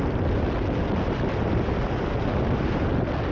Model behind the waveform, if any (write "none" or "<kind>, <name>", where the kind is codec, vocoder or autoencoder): none